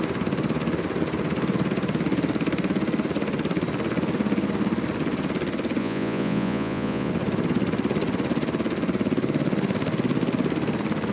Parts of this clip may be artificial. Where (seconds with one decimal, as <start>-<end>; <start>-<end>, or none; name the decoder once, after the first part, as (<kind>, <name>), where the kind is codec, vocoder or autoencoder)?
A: 5.8-7.1 (vocoder, Vocos)